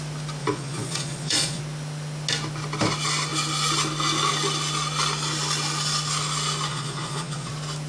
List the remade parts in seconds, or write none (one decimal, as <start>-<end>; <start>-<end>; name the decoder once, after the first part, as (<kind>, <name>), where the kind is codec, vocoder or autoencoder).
0.4-1.6 (vocoder, Vocos); 6.7-7.5